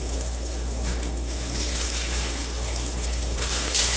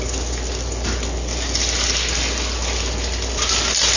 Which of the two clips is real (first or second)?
second